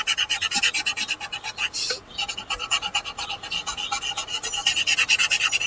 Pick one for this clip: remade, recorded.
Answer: recorded